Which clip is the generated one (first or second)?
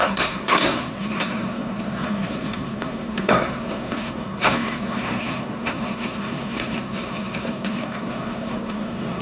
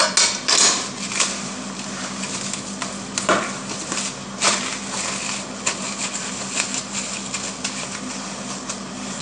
first